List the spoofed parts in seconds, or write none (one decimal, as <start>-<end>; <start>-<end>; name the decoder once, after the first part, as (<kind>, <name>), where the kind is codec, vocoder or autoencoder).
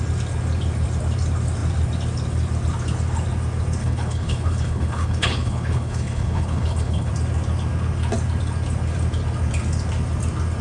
3.8-7.1 (codec, HILCodec)